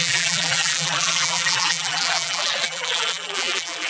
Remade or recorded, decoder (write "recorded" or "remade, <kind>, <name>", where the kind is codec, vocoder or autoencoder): remade, vocoder, BigVGAN v2